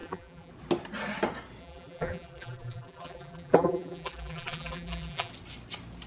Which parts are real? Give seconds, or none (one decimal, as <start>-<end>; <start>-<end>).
0.5-1.6; 5.3-6.1